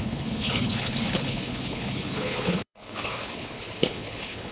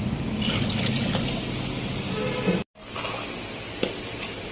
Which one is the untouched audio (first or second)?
second